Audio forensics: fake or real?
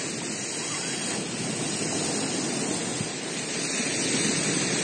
real